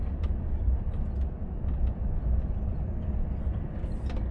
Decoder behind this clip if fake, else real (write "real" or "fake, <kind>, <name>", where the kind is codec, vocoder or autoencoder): real